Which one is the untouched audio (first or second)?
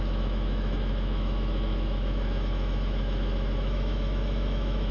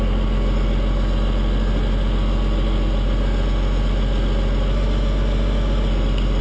second